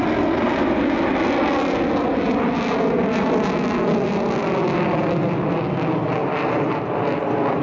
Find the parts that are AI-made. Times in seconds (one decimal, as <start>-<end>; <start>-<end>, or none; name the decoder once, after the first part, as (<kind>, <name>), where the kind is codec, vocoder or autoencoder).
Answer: none